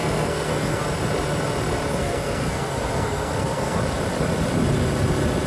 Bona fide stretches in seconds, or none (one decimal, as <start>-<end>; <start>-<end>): 0.8-2.0; 3.8-5.5